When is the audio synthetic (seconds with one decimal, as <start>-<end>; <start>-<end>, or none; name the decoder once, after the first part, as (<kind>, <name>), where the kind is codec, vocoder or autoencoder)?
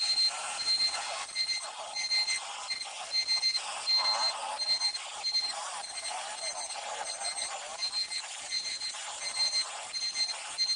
5.4-6.4 (vocoder, BigVGAN v2); 7.7-9.7